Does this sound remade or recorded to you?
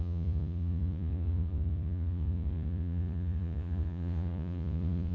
remade